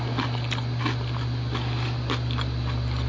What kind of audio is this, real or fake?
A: real